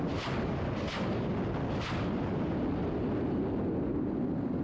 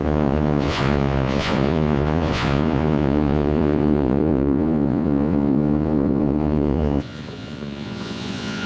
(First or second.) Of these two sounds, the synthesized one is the second